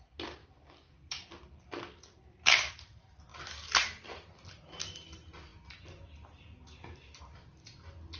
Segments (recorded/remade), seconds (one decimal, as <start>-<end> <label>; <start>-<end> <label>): 0.0-8.2 recorded